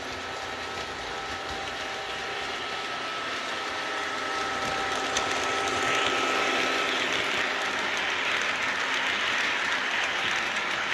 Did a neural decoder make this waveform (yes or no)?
no